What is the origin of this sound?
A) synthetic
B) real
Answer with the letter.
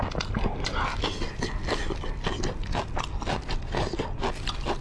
B